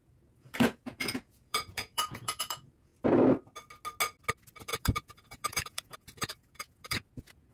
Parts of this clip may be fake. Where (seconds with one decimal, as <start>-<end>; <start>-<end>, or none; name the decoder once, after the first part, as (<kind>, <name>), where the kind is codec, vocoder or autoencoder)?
0.0-2.9 (vocoder, Vocos); 4.6-7.5